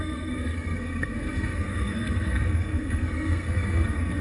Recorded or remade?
remade